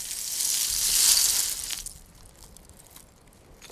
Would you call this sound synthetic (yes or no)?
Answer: no